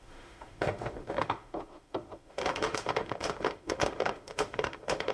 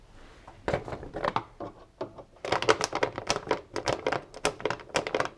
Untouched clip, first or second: second